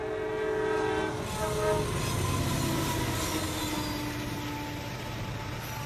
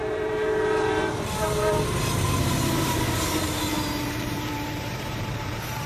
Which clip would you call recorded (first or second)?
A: first